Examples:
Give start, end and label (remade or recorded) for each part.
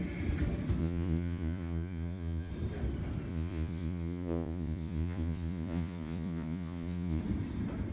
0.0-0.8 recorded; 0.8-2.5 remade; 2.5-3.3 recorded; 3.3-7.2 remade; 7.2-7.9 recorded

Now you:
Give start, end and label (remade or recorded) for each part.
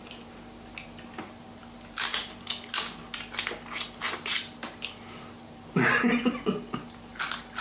0.0-7.6 recorded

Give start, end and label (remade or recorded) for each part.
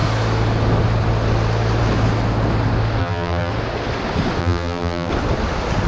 0.0-3.0 recorded; 3.0-3.5 remade; 3.5-4.4 recorded; 4.4-5.1 remade; 5.1-5.9 recorded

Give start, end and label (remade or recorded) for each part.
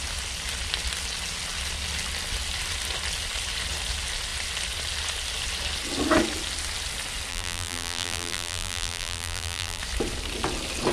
0.0-7.3 recorded; 7.3-9.8 remade; 9.8-10.9 recorded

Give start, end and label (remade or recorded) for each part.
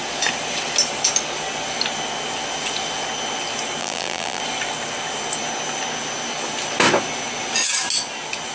0.0-3.8 recorded; 3.8-4.4 remade; 4.4-8.5 recorded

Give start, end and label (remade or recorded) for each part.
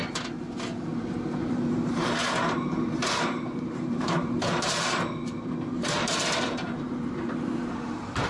0.0-0.9 recorded; 0.9-8.3 remade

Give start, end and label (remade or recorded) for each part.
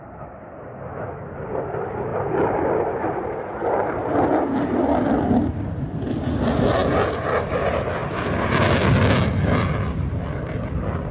0.0-2.1 recorded; 2.1-6.2 remade; 6.2-11.1 recorded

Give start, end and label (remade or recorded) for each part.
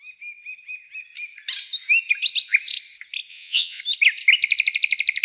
0.0-3.3 recorded; 3.3-3.8 remade; 3.8-5.2 recorded